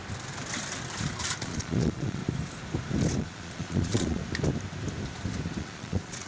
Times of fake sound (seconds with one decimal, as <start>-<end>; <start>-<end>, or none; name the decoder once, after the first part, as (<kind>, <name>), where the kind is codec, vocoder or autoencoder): 1.4-2.2 (vocoder, Vocos); 3.2-4.2; 5.6-6.3